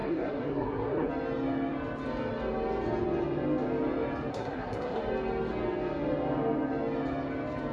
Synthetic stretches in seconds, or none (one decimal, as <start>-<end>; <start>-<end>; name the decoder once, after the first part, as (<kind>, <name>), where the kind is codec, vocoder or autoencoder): 0.0-1.1 (codec, SNAC); 4.3-5.0